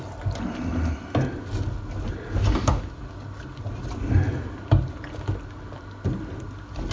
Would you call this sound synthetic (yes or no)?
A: no